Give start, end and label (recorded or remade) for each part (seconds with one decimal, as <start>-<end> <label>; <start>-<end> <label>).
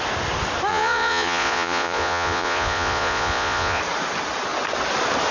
0.0-0.7 recorded; 0.7-3.8 remade; 3.8-5.3 recorded